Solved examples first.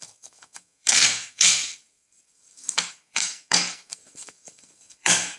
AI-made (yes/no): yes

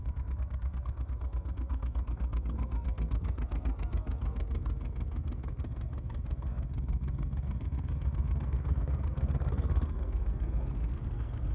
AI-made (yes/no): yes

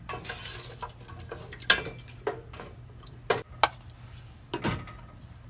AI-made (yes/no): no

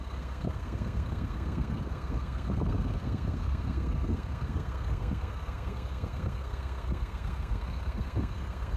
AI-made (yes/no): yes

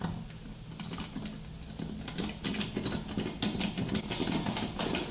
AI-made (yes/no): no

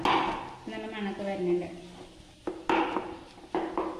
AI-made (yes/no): no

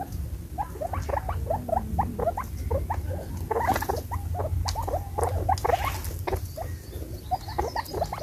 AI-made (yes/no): no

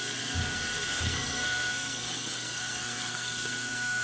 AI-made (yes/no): yes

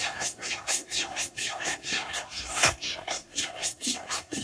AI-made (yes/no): yes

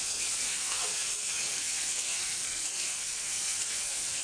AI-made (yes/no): yes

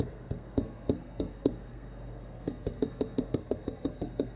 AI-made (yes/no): yes